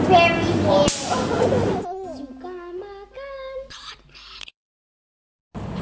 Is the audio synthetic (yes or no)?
no